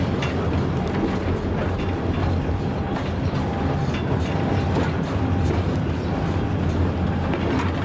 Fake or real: real